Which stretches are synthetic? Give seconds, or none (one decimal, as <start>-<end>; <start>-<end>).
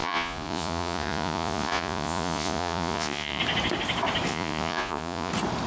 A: 0.0-3.4; 4.3-5.3